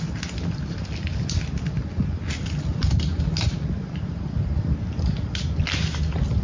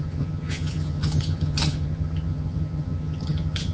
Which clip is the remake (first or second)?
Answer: second